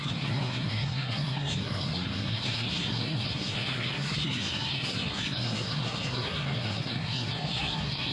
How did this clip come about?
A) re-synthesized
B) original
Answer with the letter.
A